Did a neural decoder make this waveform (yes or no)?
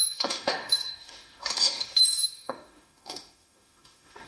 yes